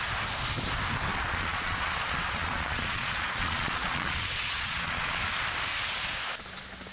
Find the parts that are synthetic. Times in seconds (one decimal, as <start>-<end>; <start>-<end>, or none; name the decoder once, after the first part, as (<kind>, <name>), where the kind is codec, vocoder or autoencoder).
1.1-5.2 (vocoder, Vocos)